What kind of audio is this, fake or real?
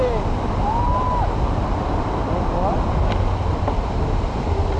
real